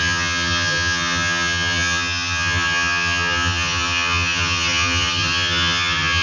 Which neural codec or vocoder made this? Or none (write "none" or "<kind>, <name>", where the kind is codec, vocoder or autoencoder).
vocoder, HiFi-GAN